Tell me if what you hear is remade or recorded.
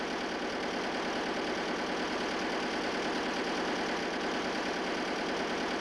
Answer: recorded